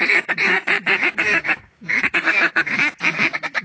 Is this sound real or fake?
fake